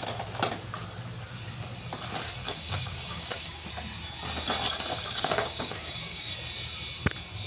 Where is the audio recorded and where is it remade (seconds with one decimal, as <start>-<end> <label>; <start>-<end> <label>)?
0.0-2.4 recorded; 2.4-3.7 remade; 3.7-4.9 recorded; 4.9-6.3 remade; 6.3-7.5 recorded